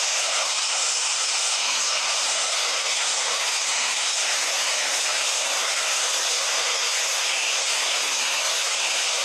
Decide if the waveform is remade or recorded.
remade